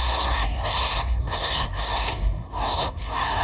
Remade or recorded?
remade